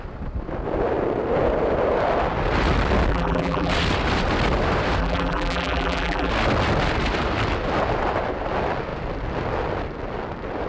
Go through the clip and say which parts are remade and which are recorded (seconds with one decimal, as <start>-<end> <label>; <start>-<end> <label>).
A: 0.0-3.1 recorded; 3.1-3.7 remade; 3.7-5.0 recorded; 5.0-6.3 remade; 6.3-10.7 recorded